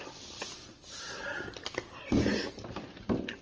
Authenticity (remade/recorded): recorded